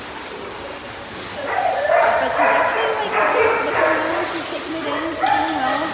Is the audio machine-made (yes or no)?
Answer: no